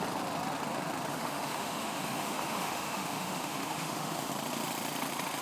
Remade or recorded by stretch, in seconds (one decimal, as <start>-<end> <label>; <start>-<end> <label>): 0.0-1.1 recorded; 1.1-4.3 remade; 4.3-5.4 recorded